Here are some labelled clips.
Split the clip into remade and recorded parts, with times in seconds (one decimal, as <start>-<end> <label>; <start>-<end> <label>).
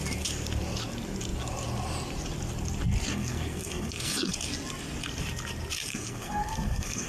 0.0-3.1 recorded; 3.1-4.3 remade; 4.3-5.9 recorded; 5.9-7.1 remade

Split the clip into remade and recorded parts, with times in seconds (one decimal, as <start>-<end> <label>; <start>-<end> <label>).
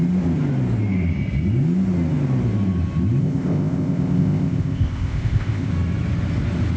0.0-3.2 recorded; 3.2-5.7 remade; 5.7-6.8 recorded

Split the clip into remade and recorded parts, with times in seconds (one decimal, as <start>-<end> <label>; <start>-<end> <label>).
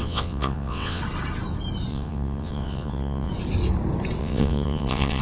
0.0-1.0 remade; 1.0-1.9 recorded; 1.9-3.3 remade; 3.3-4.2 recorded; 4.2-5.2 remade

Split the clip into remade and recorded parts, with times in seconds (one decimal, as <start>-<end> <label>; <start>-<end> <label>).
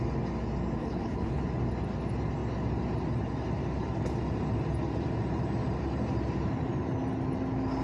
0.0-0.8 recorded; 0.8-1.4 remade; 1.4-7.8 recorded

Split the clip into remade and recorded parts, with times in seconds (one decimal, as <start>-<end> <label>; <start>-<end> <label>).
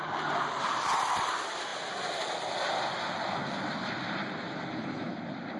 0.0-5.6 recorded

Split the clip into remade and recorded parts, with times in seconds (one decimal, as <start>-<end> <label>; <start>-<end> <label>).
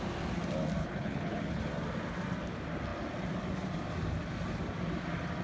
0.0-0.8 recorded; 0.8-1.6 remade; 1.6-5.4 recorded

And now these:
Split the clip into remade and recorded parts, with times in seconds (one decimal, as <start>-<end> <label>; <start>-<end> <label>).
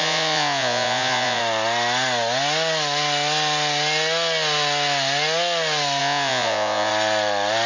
0.0-1.4 remade; 1.4-6.0 recorded; 6.0-6.9 remade; 6.9-7.7 recorded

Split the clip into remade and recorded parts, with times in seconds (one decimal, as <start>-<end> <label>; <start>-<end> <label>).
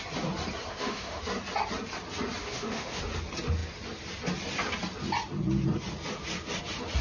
0.0-0.7 recorded; 0.7-1.2 remade; 1.2-2.4 recorded; 2.4-3.0 remade; 3.0-7.0 recorded